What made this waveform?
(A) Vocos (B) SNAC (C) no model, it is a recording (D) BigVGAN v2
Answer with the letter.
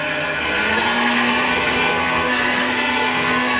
B